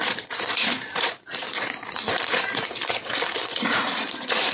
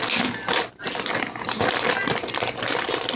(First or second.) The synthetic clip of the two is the first